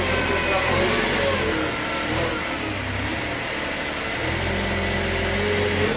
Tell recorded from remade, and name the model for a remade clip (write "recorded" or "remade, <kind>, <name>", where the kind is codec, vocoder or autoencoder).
recorded